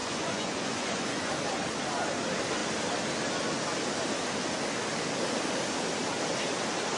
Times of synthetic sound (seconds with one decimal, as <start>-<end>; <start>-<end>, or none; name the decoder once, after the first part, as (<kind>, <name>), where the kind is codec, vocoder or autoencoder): 0.0-1.3 (vocoder, Vocos)